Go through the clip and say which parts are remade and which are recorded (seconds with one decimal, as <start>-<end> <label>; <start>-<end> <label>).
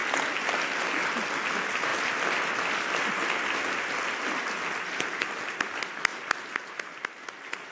0.0-7.7 recorded